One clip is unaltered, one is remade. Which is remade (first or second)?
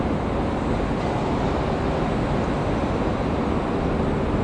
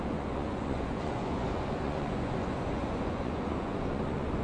second